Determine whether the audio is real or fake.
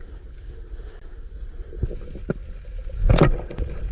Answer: real